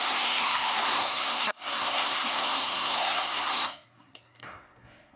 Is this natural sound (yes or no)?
no